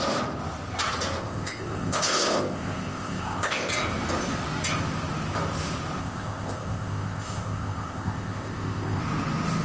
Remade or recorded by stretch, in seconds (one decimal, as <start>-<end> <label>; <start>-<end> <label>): 0.0-1.2 recorded; 1.2-3.7 remade; 3.7-6.0 recorded; 6.0-9.0 remade; 9.0-9.6 recorded